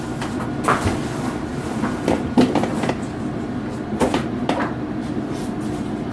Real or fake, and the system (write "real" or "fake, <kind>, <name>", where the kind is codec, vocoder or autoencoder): real